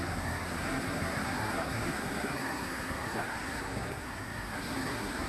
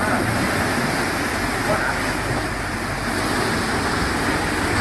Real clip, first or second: second